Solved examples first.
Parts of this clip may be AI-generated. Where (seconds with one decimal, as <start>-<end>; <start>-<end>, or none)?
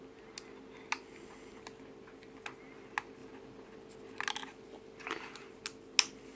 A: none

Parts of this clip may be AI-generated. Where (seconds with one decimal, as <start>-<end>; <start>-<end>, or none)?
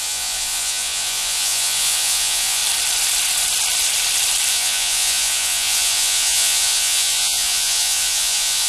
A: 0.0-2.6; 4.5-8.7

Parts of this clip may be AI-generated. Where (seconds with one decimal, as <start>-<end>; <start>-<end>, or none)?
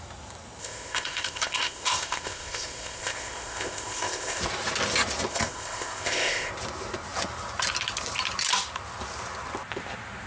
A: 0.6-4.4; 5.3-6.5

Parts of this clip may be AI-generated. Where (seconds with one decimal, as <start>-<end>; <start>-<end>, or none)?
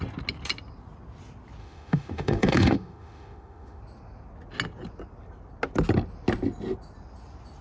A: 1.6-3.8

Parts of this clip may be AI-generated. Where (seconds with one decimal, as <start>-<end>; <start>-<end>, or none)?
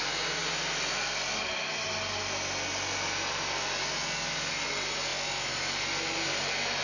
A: none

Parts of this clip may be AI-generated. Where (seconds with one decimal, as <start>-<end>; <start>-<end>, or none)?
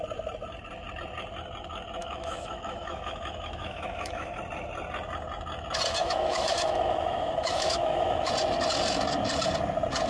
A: 2.0-4.4; 6.0-8.3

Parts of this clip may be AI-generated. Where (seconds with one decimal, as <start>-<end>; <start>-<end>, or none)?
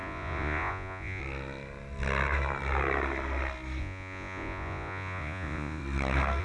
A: 0.0-1.2; 3.8-5.8